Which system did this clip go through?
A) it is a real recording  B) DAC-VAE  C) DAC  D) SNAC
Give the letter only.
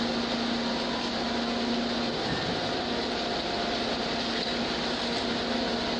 A